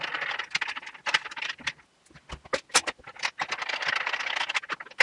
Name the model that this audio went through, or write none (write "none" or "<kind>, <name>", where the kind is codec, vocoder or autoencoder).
none